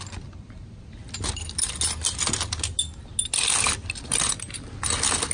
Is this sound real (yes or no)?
yes